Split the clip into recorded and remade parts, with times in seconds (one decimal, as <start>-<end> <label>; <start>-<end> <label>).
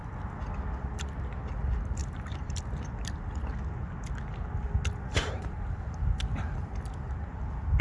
0.0-2.0 recorded; 2.0-2.6 remade; 2.6-5.1 recorded; 5.1-6.2 remade; 6.2-7.8 recorded